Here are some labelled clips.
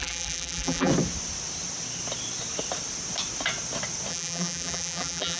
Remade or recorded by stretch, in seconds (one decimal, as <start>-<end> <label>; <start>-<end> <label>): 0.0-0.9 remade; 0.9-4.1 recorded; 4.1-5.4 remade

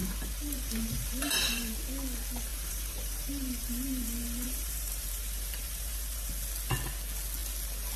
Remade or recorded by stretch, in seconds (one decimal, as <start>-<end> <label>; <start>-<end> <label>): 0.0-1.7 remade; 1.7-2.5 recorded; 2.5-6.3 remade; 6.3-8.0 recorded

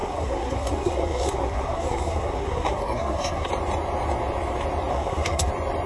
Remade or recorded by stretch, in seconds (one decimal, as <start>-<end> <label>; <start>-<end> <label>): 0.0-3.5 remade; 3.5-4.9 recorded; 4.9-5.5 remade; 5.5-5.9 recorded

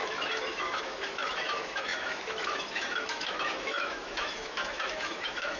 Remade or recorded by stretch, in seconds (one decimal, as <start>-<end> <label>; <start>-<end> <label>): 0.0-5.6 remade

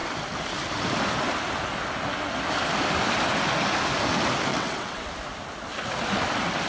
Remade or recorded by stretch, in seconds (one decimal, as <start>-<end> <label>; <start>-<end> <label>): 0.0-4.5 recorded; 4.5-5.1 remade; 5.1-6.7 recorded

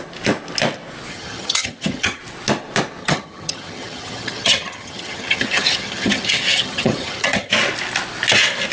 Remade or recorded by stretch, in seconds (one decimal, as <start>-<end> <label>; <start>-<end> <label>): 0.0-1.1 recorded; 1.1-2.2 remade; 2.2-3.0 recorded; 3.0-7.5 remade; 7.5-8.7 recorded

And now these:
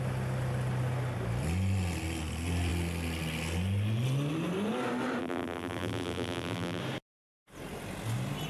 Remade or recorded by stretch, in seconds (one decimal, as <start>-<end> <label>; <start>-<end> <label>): 0.0-5.2 recorded; 5.2-6.8 remade; 6.8-8.5 recorded

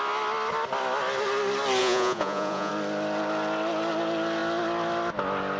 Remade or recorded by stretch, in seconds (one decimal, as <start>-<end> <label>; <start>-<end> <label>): 0.0-1.8 recorded; 1.8-2.7 remade; 2.7-5.6 recorded